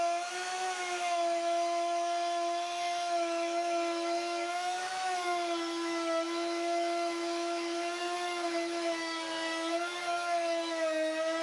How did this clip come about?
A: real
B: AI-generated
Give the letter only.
B